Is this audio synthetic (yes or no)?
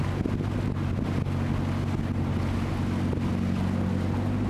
no